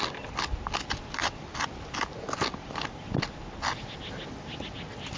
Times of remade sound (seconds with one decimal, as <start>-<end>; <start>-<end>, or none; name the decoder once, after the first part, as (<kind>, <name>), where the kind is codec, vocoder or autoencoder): none